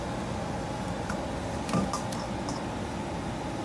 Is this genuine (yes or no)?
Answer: yes